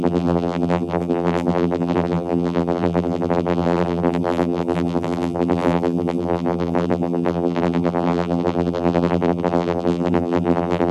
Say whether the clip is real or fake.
fake